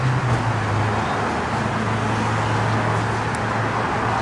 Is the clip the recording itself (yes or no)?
yes